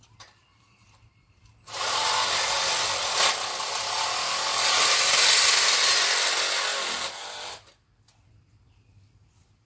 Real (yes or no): yes